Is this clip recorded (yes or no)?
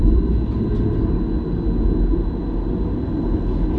yes